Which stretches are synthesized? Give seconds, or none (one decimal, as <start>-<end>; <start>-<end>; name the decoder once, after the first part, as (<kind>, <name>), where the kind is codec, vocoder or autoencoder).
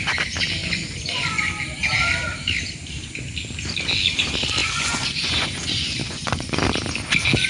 0.6-1.4 (vocoder, Vocos); 4.6-6.6